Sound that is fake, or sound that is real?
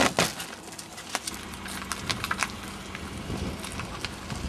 real